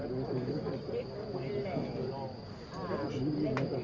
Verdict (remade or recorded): recorded